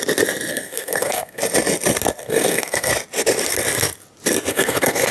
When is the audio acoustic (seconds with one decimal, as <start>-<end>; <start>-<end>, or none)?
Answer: 0.0-0.5; 1.4-2.2; 2.9-4.5